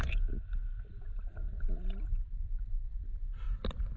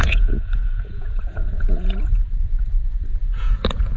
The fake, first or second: second